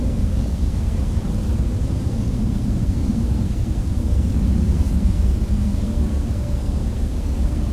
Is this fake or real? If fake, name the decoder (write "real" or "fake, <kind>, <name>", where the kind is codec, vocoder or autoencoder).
fake, codec, SNAC